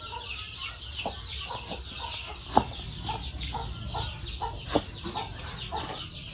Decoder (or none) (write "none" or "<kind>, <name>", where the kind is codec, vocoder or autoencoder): none